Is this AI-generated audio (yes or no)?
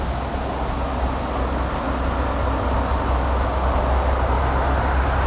no